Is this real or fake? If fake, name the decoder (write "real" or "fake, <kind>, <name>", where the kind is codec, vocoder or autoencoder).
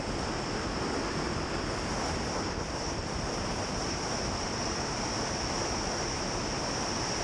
real